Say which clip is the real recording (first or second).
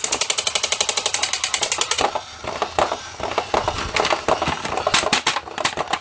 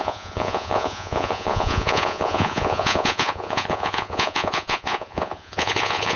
first